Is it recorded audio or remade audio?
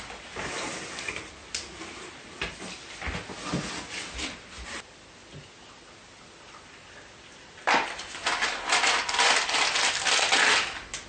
recorded